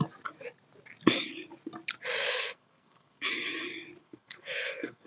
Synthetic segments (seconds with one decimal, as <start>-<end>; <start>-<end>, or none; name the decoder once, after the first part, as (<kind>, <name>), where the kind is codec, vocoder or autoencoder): 2.3-3.3 (codec, SNAC); 4.0-5.1